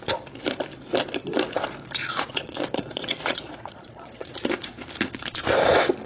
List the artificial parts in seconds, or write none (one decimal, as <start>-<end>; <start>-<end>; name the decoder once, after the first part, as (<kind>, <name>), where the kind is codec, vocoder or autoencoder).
2.0-4.8 (vocoder, Vocos)